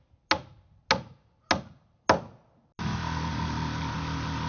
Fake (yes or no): no